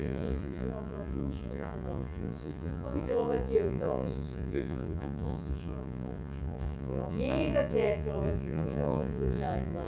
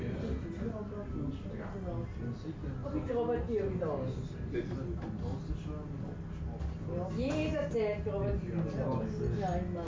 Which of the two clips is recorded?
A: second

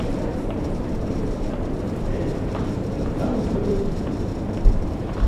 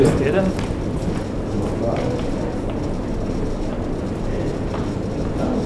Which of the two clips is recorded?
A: second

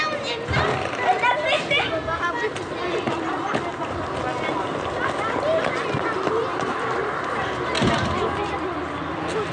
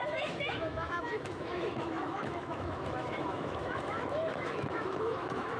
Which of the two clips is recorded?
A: first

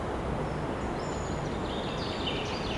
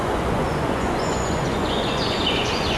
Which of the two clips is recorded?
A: first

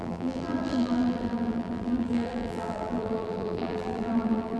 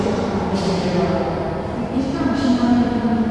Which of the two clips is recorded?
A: second